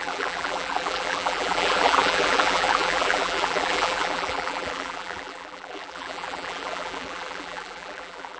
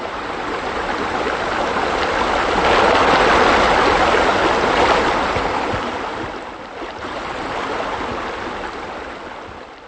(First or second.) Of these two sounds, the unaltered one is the second